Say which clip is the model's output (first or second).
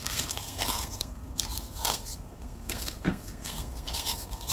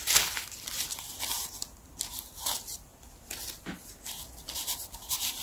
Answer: first